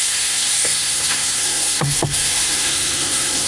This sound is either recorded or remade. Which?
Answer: remade